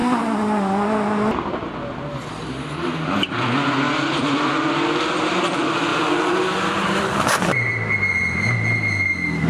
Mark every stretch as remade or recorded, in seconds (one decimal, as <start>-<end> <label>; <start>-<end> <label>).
0.0-5.9 recorded; 5.9-7.7 remade; 7.7-9.5 recorded